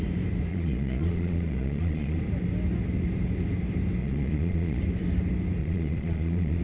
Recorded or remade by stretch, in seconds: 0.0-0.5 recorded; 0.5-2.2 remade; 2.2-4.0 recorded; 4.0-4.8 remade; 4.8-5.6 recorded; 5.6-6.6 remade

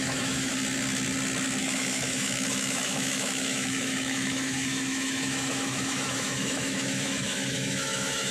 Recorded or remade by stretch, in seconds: 0.0-0.5 remade; 0.5-1.6 recorded; 1.6-8.3 remade